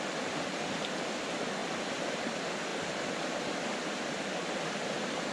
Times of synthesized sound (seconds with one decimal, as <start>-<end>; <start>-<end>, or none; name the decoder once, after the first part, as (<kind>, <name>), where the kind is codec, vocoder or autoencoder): 2.7-3.5 (vocoder, BigVGAN v2)